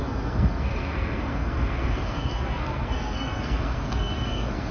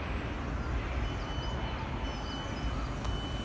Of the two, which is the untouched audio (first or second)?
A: second